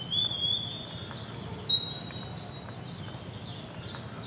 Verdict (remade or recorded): recorded